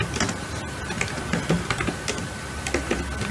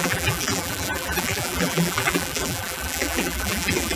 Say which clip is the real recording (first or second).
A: first